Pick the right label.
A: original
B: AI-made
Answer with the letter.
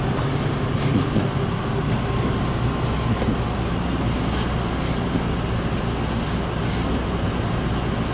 A